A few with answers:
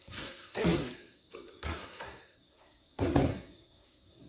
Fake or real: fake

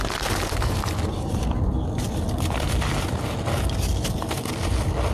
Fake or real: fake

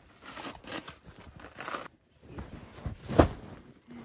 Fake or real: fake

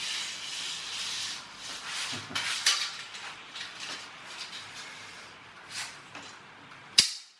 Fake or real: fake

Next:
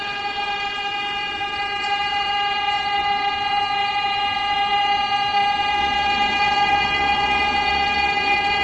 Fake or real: fake